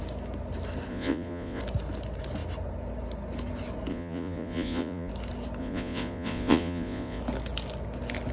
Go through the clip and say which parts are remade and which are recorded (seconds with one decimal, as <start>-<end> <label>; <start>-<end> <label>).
0.0-0.9 recorded; 0.9-1.6 remade; 1.6-3.9 recorded; 3.9-5.1 remade; 5.1-5.6 recorded; 5.6-7.2 remade; 7.2-8.3 recorded